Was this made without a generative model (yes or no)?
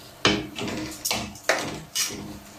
yes